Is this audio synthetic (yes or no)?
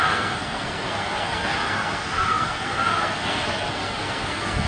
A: yes